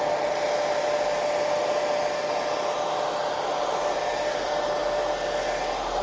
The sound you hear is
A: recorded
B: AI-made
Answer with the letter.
A